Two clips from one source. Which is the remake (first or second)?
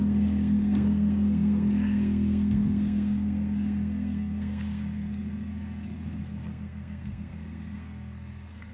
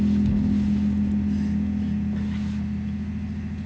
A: first